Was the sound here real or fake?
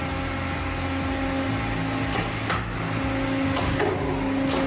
real